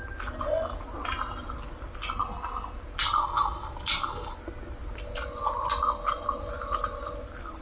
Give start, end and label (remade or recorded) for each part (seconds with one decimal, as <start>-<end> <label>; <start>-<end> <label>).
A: 0.0-7.6 recorded